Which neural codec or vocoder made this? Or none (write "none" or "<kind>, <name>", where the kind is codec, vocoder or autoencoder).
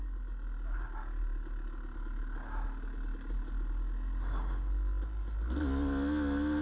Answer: none